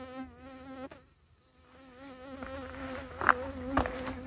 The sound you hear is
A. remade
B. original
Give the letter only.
B